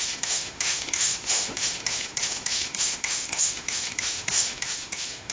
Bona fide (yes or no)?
no